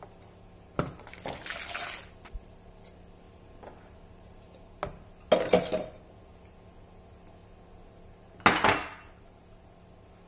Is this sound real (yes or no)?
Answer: yes